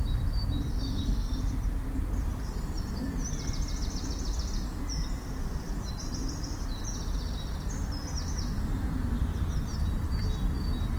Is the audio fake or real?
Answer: real